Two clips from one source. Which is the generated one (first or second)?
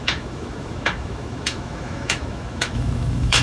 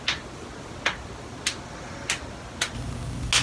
first